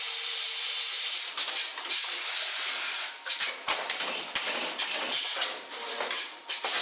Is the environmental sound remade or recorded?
recorded